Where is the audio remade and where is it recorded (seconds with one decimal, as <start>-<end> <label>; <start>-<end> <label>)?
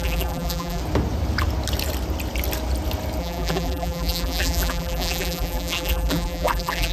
0.0-0.8 remade; 0.8-3.2 recorded; 3.2-6.9 remade